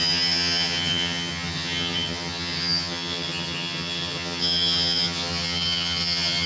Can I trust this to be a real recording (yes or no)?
no